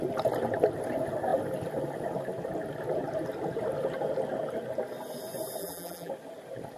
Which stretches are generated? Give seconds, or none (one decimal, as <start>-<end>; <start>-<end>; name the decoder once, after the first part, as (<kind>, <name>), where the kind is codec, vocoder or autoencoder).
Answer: 5.6-6.1 (vocoder, BigVGAN v2)